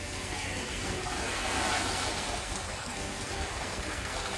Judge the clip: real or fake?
fake